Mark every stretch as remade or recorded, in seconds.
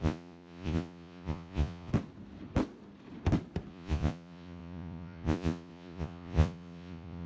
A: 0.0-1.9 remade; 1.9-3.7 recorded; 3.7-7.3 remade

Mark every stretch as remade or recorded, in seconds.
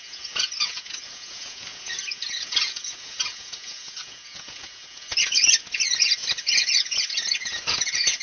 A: 0.0-8.2 remade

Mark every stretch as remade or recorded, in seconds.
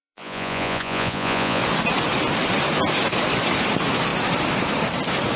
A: 0.0-1.6 remade; 1.6-5.4 recorded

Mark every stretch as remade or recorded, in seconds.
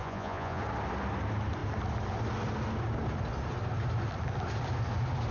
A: 0.0-0.6 remade; 0.6-5.3 recorded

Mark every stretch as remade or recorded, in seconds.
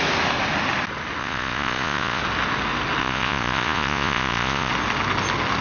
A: 0.0-1.2 recorded; 1.2-2.2 remade; 2.2-3.0 recorded; 3.0-4.7 remade; 4.7-5.6 recorded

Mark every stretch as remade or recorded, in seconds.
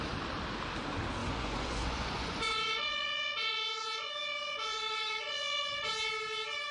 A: 0.0-1.2 recorded; 1.2-4.1 remade; 4.1-4.5 recorded; 4.5-5.9 remade; 5.9-6.7 recorded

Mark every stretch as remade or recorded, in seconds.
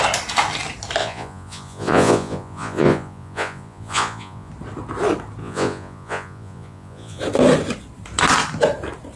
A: 0.0-1.0 recorded; 1.0-4.5 remade; 4.5-5.4 recorded; 5.4-7.2 remade; 7.2-9.2 recorded